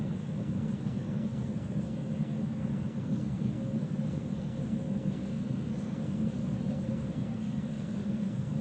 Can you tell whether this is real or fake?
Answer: fake